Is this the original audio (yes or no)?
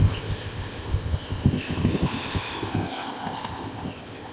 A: no